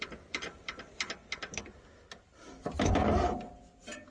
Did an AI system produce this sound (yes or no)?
no